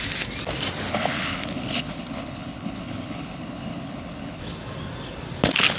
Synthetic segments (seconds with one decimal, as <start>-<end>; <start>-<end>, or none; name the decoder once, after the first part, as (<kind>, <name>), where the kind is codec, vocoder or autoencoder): 0.9-4.4 (codec, HILCodec)